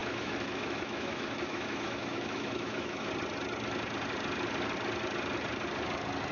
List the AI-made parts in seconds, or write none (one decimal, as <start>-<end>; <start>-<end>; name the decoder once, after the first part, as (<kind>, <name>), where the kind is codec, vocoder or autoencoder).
0.0-3.1 (autoencoder, DAC-VAE)